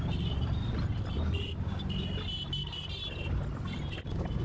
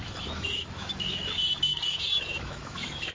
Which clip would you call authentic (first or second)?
first